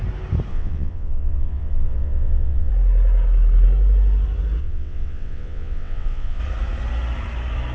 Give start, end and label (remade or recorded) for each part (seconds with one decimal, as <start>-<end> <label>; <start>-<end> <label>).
0.0-0.5 recorded; 0.5-2.7 remade; 2.7-4.6 recorded; 4.6-6.4 remade; 6.4-7.7 recorded